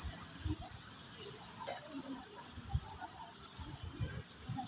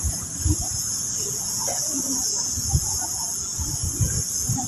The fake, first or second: second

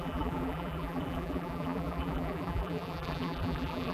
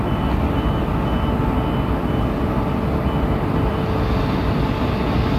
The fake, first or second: first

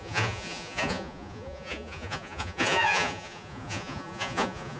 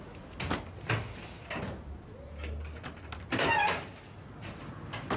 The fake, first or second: first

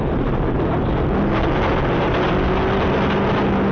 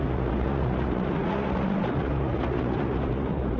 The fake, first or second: second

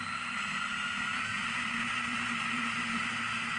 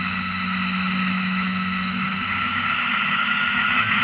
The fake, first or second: second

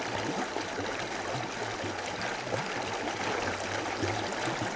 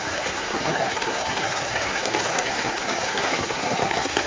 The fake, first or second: second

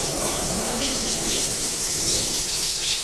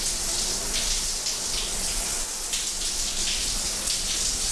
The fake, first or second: first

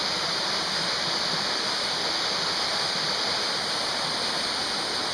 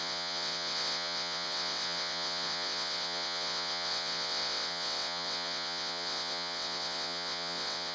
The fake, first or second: second